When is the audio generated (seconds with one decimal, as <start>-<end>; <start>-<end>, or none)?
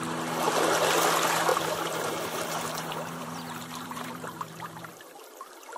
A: 1.5-4.9